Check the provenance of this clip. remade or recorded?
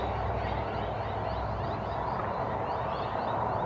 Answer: recorded